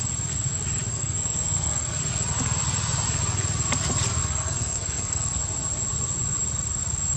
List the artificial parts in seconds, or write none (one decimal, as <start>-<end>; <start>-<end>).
0.9-2.0; 4.2-5.4

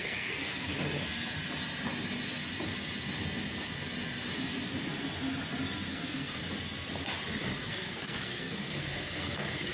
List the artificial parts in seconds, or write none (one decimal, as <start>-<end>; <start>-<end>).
0.0-0.7; 5.9-6.4; 7.6-9.7

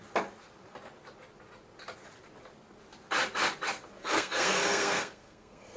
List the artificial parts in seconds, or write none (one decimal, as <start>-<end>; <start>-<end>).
4.0-5.8